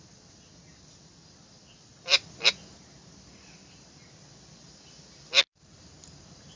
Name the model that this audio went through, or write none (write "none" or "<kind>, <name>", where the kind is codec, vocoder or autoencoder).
none